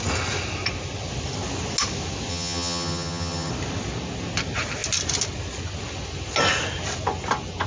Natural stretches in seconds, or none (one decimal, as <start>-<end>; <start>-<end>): 0.0-2.3; 3.5-7.7